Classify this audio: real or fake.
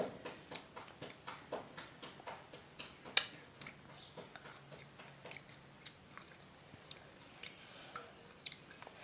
real